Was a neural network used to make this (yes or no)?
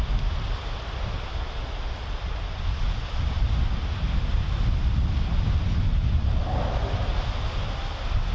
no